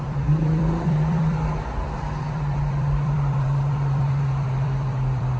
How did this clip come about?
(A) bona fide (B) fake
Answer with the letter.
B